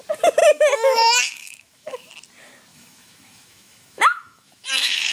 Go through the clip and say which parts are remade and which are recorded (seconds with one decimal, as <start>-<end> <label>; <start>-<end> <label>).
0.0-0.4 recorded; 0.4-2.1 remade; 2.1-2.7 recorded; 2.7-5.1 remade